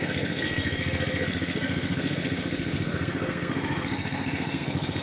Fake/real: fake